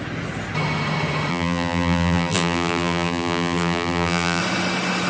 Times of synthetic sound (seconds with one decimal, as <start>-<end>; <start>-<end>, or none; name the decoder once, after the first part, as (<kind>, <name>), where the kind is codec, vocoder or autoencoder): 1.3-4.4 (vocoder, BigVGAN v2)